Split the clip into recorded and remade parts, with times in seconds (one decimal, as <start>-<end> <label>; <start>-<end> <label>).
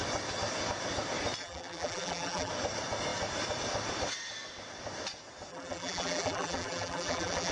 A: 0.0-1.4 recorded; 1.4-2.5 remade; 2.5-5.5 recorded; 5.5-7.5 remade